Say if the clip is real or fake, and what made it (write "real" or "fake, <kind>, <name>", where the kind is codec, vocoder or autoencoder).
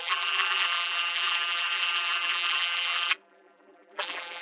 fake, vocoder, BigVGAN v2